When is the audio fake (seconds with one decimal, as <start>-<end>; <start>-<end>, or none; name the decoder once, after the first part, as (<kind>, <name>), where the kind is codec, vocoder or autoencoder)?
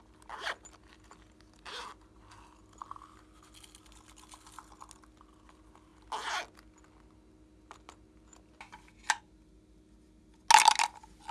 none